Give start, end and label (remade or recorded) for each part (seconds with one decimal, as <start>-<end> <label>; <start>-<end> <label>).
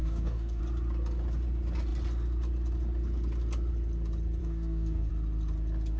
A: 0.0-0.6 remade; 0.6-4.4 recorded; 4.4-5.1 remade; 5.1-6.0 recorded